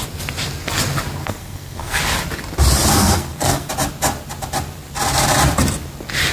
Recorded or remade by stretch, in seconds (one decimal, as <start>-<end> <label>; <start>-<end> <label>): 0.0-1.2 recorded; 1.2-2.0 remade; 2.0-2.9 recorded; 2.9-3.7 remade; 3.7-6.3 recorded